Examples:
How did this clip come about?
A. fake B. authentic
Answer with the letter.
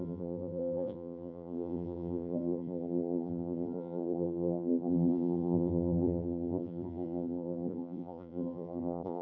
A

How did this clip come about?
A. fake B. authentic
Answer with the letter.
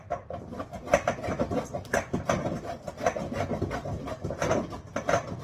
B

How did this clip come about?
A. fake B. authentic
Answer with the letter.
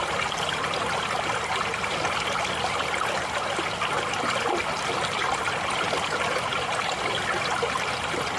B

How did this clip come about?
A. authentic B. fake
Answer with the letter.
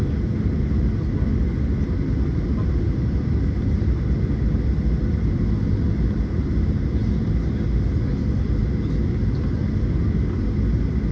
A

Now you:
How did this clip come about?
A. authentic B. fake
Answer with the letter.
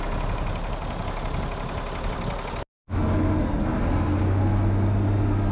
A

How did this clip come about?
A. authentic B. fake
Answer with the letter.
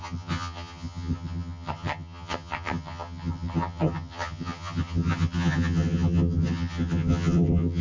B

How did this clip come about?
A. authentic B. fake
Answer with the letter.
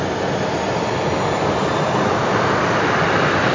A